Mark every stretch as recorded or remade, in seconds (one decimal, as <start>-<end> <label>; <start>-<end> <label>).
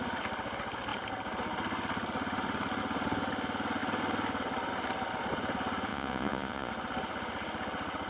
0.0-5.9 recorded; 5.9-6.7 remade; 6.7-8.1 recorded